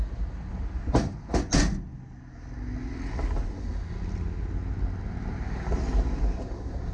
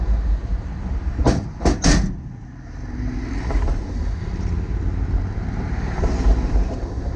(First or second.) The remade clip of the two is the second